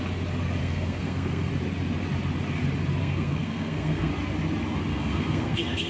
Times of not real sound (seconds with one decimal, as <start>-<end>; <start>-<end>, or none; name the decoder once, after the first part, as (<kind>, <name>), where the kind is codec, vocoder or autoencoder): 0.6-1.5 (codec, SNAC); 3.0-4.1; 4.9-5.9